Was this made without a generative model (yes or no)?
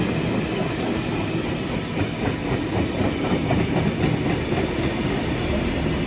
yes